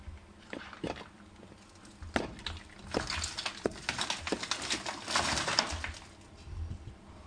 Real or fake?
real